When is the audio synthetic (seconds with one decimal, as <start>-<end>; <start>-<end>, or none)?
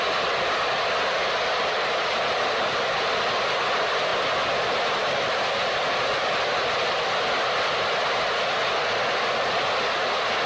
none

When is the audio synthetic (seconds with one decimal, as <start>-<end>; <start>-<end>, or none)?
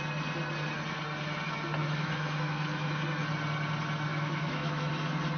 1.8-2.9; 4.1-4.9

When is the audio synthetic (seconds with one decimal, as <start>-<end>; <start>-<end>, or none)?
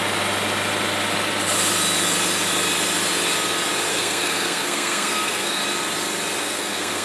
3.9-5.6; 6.4-7.0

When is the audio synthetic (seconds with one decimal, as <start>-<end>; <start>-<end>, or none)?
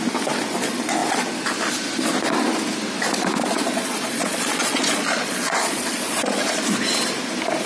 3.4-6.6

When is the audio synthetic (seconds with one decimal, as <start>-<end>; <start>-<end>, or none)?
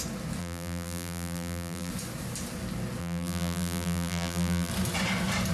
0.4-1.9; 3.0-4.7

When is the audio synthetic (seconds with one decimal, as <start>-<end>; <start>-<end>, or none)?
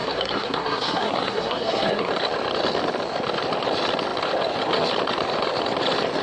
0.0-2.1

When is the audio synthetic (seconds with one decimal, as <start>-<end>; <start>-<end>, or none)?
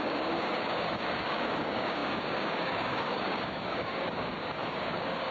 0.0-5.3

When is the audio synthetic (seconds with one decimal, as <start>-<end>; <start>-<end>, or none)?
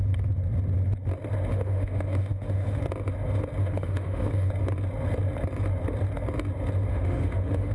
1.5-2.8; 3.6-4.5; 6.9-7.7